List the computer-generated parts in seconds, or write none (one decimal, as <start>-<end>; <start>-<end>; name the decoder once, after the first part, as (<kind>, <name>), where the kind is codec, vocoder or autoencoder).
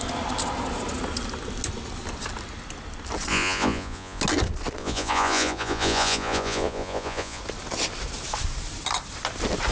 3.3-4.2 (vocoder, Vocos); 4.8-7.4